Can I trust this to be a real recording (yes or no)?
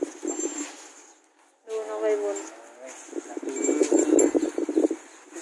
yes